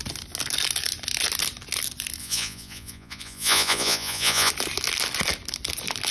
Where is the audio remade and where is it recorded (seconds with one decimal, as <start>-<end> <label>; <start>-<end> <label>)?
0.0-2.2 recorded; 2.2-4.5 remade; 4.5-6.1 recorded